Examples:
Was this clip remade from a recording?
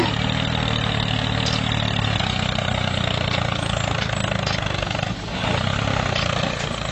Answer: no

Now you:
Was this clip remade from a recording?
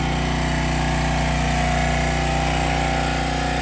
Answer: no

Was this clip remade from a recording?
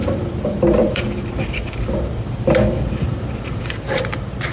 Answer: yes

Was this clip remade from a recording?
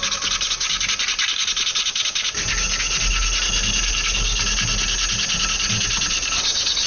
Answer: no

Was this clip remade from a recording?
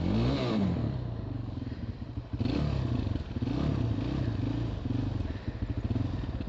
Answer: no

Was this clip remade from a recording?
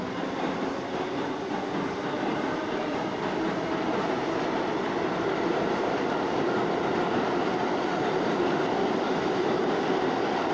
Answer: yes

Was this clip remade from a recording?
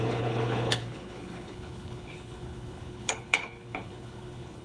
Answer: yes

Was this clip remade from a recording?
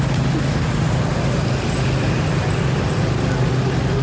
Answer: no